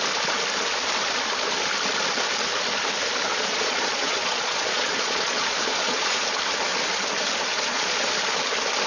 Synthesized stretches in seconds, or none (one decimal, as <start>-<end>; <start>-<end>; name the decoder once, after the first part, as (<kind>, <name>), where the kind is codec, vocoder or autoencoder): 3.3-6.2 (vocoder, Vocos); 7.5-8.1